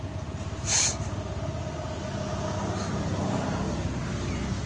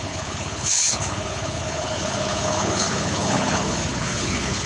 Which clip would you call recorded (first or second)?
first